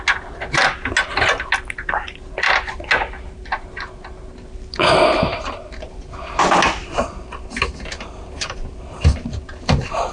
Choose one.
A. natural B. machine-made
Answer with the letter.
A